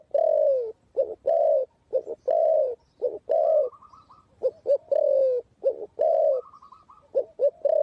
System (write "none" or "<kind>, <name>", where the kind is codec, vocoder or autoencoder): none